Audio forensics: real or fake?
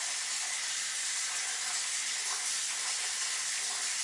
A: real